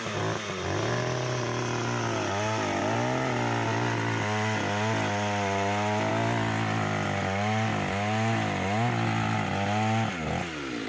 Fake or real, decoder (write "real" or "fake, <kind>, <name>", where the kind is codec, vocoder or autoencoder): real